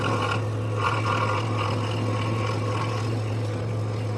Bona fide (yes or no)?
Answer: yes